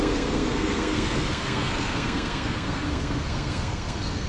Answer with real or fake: fake